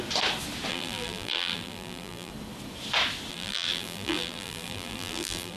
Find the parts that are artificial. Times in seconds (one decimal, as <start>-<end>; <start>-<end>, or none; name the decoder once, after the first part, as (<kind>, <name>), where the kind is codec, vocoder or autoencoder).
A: 0.7-2.3 (vocoder, BigVGAN v2); 3.3-5.6